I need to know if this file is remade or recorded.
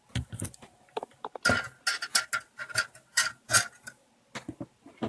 recorded